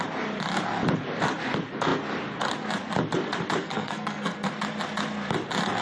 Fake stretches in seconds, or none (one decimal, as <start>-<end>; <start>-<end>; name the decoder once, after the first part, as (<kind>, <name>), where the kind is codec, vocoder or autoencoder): 3.6-4.5 (codec, SNAC)